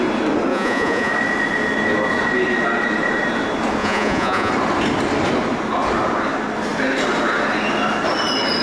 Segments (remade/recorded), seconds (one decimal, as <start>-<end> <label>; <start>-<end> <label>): 0.0-0.5 recorded; 0.5-1.1 remade; 1.1-3.8 recorded; 3.8-4.5 remade; 4.5-8.6 recorded